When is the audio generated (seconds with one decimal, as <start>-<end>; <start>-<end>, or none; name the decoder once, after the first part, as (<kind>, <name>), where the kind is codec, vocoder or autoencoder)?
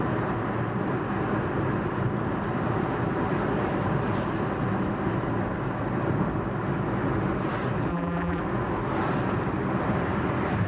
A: 7.9-8.4 (vocoder, BigVGAN v2)